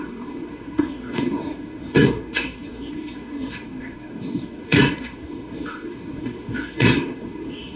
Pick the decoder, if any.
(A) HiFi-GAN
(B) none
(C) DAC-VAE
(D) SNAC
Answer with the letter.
D